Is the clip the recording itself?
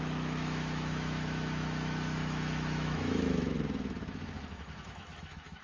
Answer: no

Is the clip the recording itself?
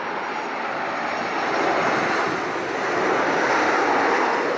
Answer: yes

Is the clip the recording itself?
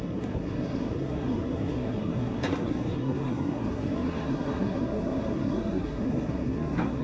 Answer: no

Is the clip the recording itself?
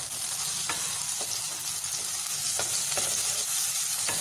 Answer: yes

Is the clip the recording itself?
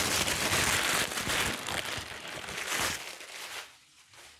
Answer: yes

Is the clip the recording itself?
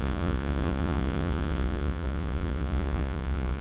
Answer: no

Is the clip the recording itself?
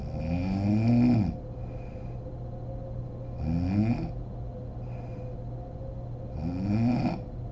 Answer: yes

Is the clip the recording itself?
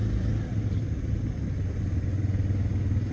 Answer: yes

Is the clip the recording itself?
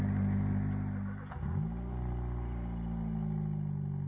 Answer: yes